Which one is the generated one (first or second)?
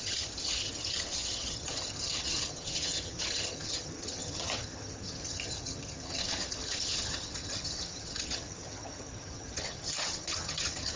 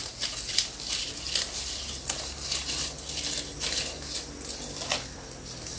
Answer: first